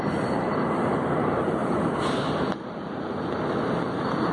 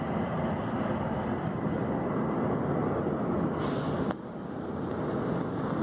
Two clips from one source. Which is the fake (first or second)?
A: first